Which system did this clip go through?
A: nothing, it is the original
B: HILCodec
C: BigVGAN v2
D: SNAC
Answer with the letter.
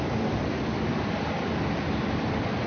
A